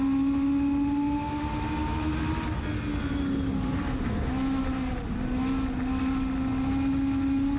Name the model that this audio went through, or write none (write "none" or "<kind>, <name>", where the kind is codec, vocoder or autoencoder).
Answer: none